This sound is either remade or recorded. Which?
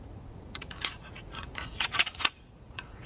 remade